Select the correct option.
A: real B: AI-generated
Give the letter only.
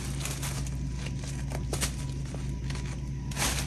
A